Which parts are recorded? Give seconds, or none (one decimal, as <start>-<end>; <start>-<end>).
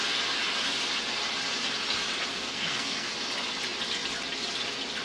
0.0-2.3; 3.1-5.0